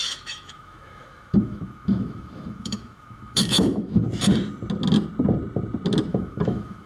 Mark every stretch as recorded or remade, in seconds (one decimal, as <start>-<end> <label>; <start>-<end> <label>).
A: 0.0-4.1 remade; 4.1-6.1 recorded; 6.1-6.9 remade